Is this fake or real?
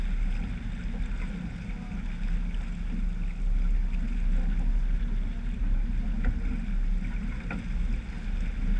real